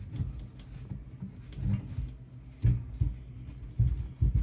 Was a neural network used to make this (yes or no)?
no